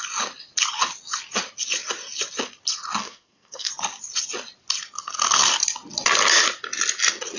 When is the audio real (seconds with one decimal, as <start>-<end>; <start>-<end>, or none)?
0.0-3.0; 3.7-7.4